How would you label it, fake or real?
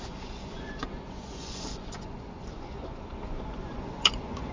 fake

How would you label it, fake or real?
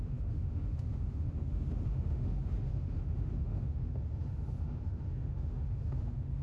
fake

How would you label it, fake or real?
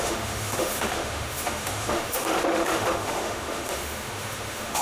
fake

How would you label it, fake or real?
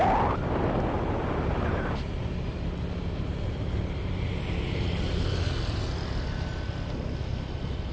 real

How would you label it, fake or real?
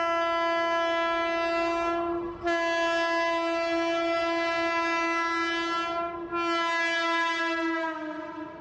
real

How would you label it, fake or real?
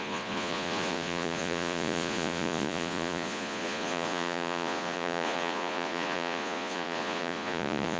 fake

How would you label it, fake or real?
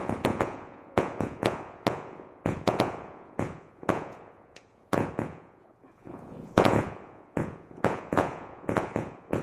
fake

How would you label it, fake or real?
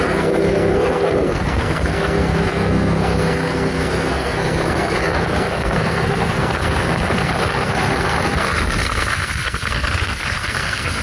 fake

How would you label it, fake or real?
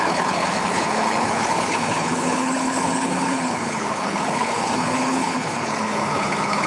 fake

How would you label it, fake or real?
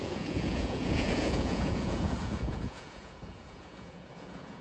fake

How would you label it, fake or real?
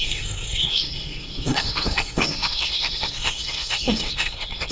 fake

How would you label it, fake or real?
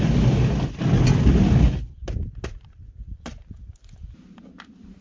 real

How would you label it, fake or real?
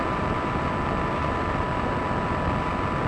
real